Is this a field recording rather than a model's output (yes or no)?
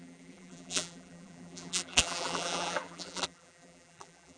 no